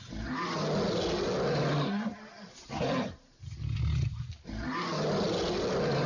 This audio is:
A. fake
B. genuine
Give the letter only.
B